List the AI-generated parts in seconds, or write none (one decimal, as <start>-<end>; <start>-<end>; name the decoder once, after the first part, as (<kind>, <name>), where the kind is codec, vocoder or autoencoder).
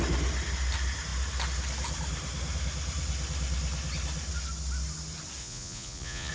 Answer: 5.4-6.3 (vocoder, Vocos)